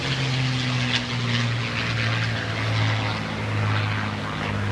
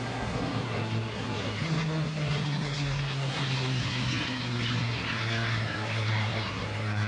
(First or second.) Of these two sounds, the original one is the first